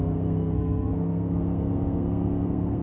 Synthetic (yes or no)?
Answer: yes